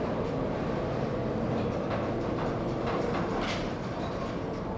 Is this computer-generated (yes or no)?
no